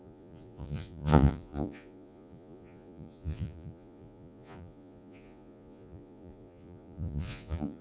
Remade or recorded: remade